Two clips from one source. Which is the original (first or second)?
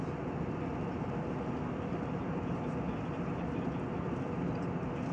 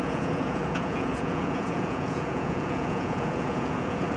first